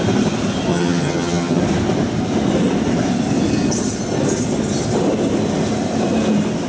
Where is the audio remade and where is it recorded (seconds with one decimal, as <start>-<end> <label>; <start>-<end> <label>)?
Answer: 0.0-0.7 recorded; 0.7-1.6 remade; 1.6-6.7 recorded